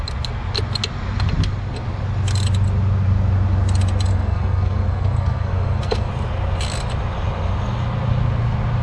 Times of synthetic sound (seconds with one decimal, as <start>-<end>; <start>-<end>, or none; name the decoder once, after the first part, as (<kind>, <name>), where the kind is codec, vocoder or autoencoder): 4.1-6.1 (codec, SNAC)